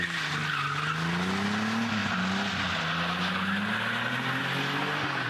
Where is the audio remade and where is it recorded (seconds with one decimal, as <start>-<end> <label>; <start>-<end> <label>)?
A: 0.0-5.3 recorded